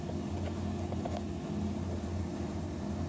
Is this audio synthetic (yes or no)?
no